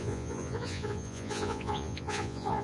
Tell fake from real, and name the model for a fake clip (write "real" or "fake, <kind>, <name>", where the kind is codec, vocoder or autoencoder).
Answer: fake, vocoder, Vocos